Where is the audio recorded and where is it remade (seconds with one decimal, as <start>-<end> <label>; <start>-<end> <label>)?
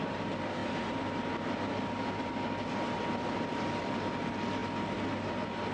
0.0-5.7 recorded